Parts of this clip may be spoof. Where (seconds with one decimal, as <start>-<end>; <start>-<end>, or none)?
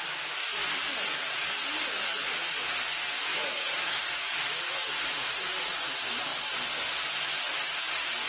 3.3-4.0